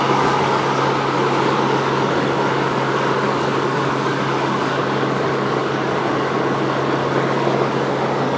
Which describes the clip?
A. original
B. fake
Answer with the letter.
B